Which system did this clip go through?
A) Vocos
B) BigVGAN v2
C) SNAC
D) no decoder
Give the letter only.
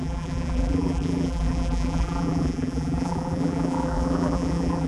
B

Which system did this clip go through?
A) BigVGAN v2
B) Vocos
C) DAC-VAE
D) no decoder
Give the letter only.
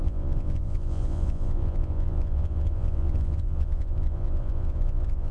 B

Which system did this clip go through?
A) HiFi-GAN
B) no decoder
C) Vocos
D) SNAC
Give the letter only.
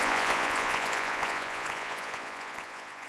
C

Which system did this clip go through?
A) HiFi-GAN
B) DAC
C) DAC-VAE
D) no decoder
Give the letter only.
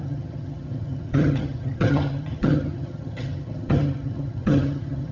A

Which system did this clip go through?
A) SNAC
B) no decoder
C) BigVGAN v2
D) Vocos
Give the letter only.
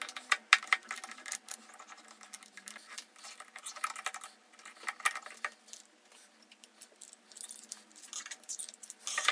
B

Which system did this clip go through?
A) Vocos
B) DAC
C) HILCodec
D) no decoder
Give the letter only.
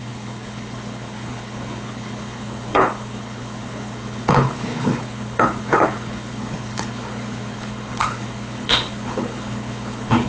C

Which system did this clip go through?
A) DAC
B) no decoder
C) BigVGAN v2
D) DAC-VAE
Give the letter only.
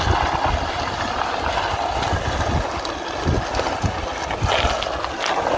B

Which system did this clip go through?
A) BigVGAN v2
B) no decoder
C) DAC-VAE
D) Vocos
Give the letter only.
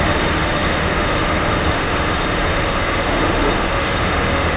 C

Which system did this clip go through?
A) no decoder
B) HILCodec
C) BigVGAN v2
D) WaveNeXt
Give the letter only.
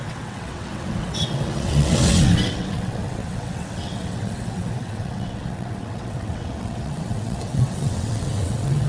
D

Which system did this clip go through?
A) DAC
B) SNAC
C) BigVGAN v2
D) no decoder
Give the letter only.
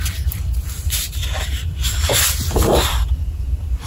C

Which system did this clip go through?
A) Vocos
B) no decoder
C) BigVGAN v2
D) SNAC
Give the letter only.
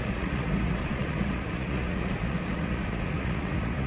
A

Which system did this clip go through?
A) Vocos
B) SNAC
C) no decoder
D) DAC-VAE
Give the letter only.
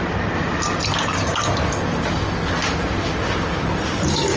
C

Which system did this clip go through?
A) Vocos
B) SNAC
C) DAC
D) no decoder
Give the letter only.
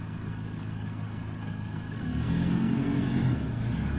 B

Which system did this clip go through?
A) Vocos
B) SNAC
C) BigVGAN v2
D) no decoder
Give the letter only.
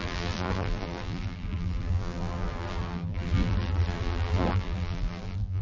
C